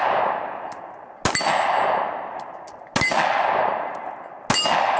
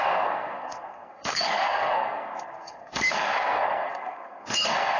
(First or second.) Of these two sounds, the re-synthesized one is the second